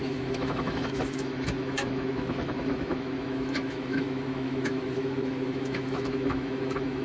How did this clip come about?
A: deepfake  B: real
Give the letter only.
A